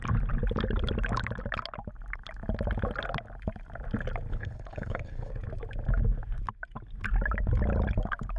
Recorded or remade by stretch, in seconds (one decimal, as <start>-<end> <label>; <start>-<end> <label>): 0.0-4.3 recorded; 4.3-5.3 remade; 5.3-8.4 recorded